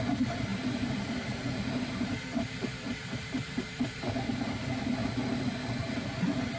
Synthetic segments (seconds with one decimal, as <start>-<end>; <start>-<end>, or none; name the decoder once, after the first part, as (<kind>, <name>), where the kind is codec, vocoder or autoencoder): 0.5-4.0 (vocoder, BigVGAN v2)